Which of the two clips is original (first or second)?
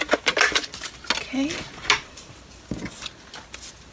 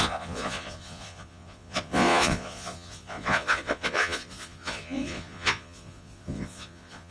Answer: first